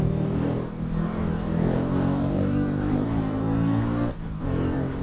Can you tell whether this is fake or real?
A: fake